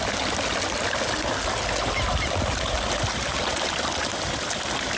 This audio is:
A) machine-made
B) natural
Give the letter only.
B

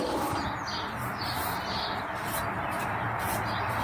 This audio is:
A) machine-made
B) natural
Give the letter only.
B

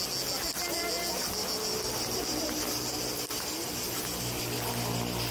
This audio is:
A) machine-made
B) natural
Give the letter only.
B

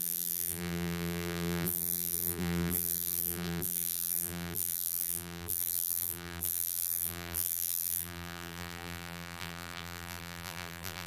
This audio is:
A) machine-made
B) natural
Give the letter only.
A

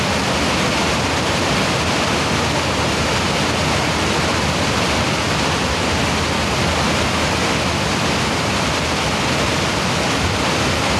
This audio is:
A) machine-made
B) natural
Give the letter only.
B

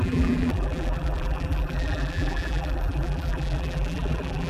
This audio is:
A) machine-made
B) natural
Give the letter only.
A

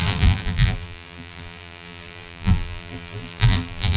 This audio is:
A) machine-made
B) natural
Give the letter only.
A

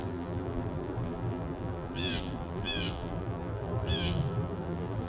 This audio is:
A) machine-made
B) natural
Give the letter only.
A